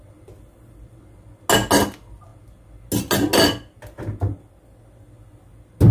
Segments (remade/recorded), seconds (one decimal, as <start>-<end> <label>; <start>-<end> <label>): 0.0-5.9 recorded

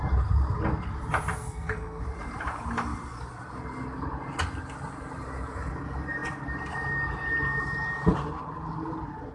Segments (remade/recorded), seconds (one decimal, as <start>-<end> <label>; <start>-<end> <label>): 0.0-1.3 recorded; 1.3-2.0 remade; 2.0-9.3 recorded